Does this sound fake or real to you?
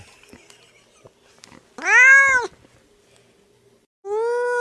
real